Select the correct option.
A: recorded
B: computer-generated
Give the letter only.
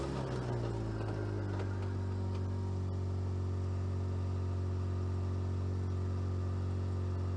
A